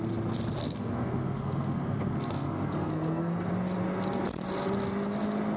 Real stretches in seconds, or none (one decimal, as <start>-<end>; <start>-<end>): 0.0-0.6; 3.5-5.6